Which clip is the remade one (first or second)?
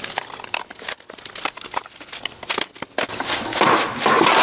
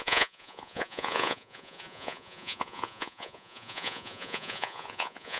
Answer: second